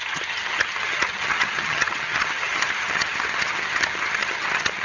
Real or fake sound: fake